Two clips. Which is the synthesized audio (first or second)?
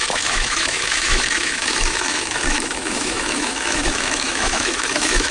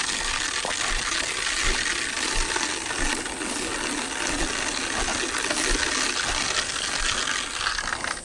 first